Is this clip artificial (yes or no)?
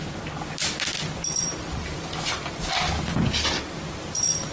no